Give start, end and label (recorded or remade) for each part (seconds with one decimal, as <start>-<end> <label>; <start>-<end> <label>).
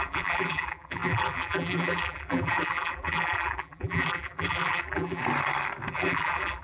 0.0-5.2 remade; 5.2-5.9 recorded; 5.9-6.6 remade